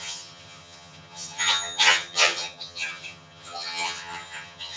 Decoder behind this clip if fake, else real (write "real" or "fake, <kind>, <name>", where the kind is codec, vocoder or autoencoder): fake, vocoder, HiFi-GAN